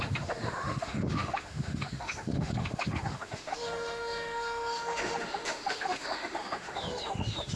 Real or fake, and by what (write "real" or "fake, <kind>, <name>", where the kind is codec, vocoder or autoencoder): fake, autoencoder, DAC-VAE